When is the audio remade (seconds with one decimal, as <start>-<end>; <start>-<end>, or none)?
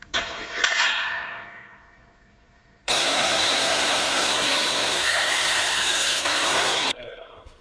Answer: 0.0-7.6